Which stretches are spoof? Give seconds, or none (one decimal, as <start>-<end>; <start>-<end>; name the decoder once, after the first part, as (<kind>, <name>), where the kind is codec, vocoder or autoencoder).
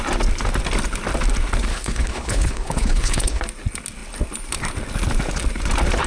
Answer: 1.7-3.4 (codec, HILCodec)